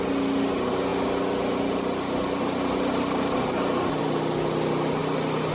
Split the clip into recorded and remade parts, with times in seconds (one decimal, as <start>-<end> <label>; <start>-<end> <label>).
0.0-5.5 recorded